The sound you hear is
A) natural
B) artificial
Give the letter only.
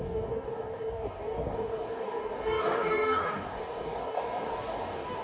B